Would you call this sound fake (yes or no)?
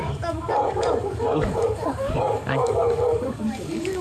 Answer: yes